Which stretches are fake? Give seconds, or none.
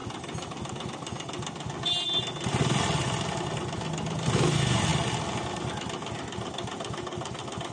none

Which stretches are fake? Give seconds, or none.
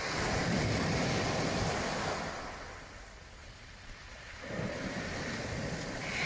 none